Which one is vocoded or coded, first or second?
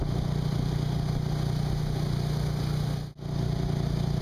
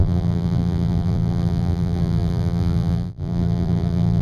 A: second